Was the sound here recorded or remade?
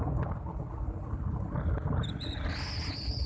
recorded